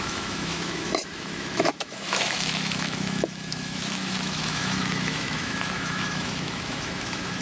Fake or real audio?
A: fake